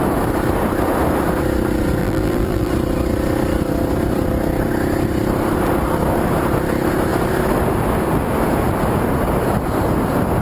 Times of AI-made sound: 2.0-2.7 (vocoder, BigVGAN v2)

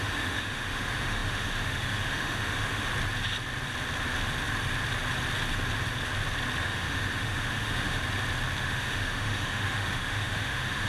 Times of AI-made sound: 0.0-2.9 (autoencoder, DAC-VAE); 6.6-8.0; 8.6-10.9

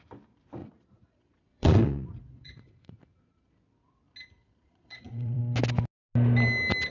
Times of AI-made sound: 0.6-3.5 (vocoder, Vocos); 4.4-5.4

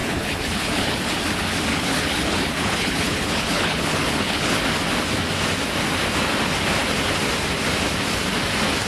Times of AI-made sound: 0.0-1.2 (codec, HILCodec); 1.7-4.6